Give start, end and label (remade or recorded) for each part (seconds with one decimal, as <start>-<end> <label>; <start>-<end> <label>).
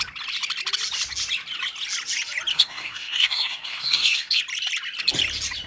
0.0-2.5 recorded; 2.5-4.4 remade; 4.4-5.7 recorded